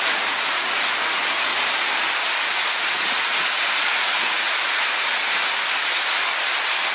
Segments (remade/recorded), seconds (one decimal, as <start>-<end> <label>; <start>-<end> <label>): 0.0-1.5 remade; 1.5-2.7 recorded; 2.7-5.1 remade; 5.1-6.9 recorded